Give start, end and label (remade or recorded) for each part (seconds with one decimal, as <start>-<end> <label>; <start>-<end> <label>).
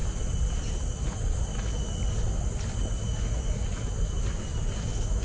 0.0-5.2 recorded